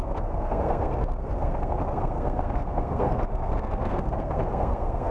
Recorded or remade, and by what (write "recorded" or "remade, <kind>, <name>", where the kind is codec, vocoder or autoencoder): remade, codec, SNAC